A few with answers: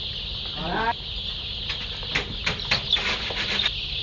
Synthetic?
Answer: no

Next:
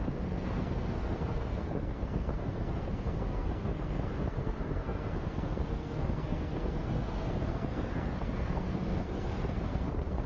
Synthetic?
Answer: yes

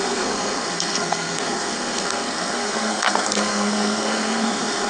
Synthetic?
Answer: yes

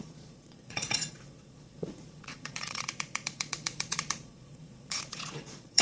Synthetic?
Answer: yes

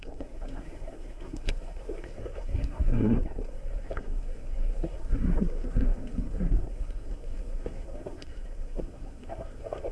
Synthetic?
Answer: yes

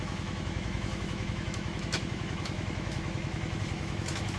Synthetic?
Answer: yes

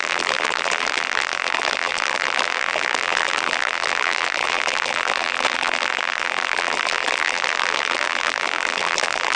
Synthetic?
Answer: yes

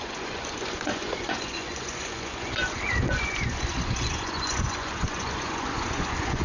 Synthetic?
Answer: yes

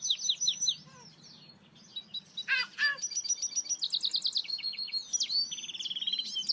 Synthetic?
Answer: no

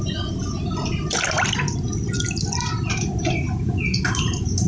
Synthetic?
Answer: no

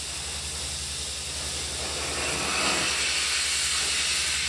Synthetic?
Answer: no